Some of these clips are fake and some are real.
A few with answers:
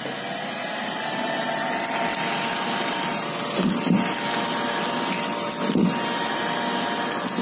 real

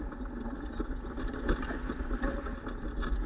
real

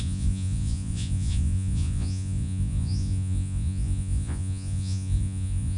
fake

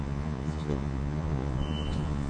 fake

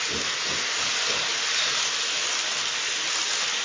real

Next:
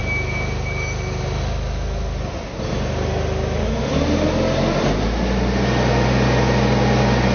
real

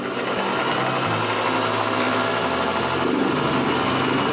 real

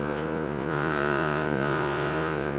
fake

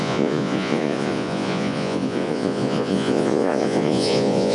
fake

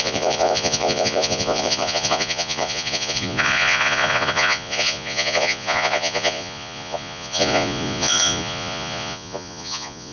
fake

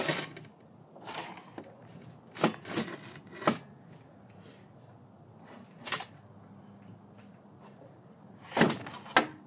real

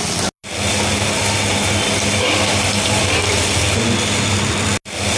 real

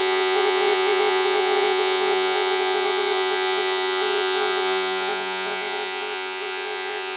fake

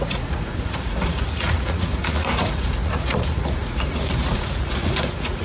fake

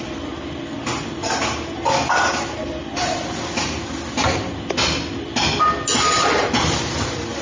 real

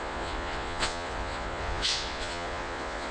fake